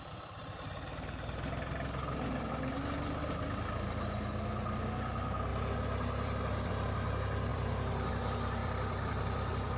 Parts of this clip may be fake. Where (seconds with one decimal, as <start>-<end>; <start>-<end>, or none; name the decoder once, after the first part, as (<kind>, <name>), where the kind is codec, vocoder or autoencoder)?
5.5-6.7 (vocoder, BigVGAN v2); 7.5-8.1; 8.6-9.8